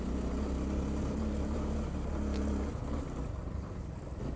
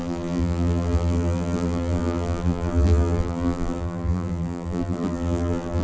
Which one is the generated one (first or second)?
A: second